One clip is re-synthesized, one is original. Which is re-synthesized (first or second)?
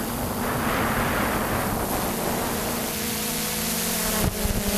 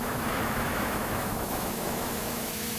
second